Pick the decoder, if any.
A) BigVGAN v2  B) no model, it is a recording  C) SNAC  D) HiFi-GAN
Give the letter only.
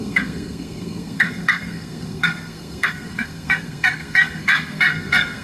C